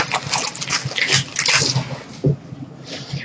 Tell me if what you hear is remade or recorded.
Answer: recorded